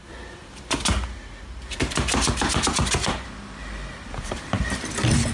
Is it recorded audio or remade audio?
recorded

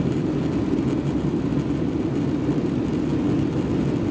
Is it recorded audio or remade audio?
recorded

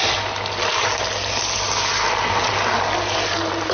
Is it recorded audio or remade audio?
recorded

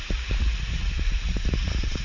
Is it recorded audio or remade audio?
remade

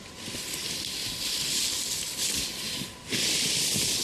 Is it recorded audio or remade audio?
recorded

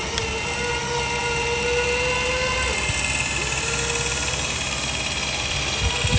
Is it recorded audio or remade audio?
recorded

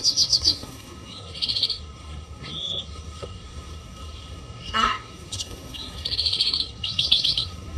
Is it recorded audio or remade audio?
remade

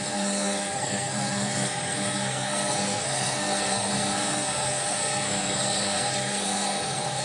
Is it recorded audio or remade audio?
remade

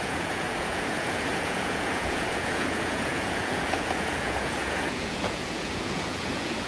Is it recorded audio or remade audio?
remade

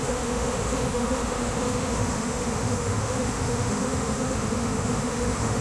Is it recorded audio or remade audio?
remade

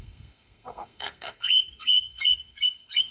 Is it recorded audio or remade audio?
remade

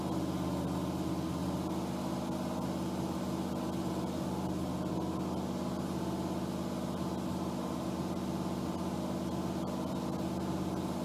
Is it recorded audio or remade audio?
recorded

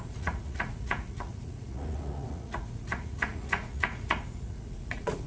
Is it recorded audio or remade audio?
remade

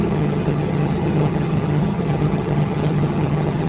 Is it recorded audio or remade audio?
remade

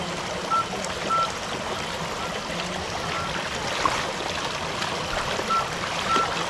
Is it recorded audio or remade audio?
recorded